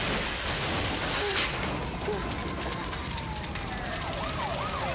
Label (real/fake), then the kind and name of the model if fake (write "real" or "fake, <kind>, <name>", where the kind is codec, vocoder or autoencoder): real